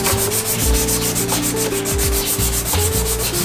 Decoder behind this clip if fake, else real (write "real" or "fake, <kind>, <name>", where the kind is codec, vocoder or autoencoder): real